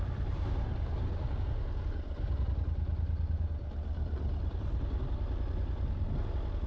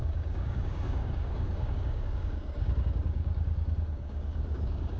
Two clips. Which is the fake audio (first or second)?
second